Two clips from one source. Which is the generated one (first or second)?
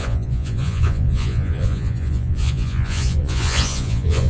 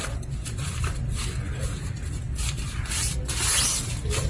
first